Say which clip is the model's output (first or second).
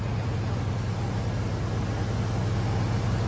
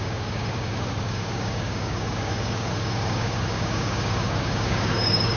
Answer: second